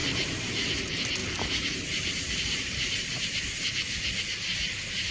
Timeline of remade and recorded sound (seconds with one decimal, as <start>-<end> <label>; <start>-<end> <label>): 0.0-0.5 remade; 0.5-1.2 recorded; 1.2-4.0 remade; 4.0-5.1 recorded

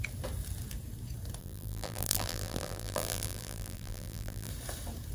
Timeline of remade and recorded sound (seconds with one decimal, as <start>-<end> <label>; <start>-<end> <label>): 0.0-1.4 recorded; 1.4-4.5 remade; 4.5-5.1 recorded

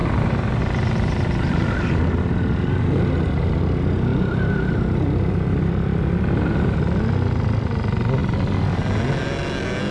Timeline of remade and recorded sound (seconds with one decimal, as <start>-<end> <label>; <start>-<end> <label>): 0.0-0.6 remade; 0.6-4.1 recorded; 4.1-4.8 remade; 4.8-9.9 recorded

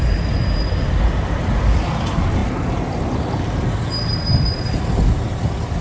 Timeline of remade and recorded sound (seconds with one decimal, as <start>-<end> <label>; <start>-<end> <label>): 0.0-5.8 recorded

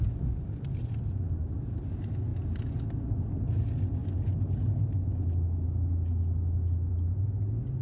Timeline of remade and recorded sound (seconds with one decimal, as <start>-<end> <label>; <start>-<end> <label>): 0.0-7.8 recorded

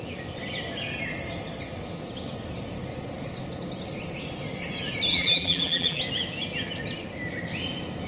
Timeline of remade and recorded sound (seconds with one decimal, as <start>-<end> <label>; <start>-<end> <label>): 0.0-5.1 recorded; 5.1-6.0 remade; 6.0-8.1 recorded